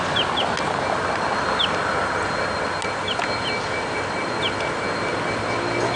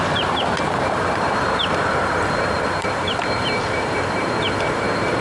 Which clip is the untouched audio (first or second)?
first